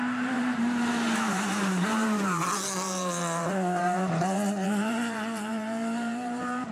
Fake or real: fake